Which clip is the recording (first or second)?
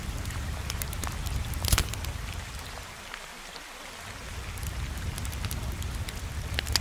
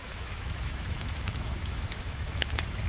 first